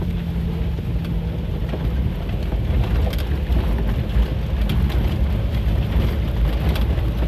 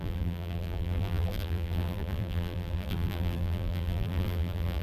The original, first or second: first